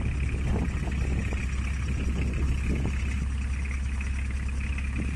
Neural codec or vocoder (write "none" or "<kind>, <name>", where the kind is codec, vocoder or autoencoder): none